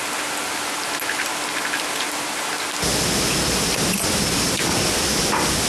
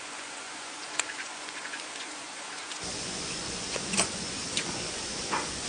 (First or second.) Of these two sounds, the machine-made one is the second